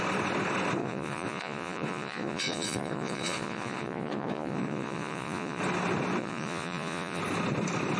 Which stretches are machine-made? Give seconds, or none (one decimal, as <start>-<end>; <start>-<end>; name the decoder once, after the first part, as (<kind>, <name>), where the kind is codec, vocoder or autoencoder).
0.8-5.6 (vocoder, Vocos); 6.2-7.2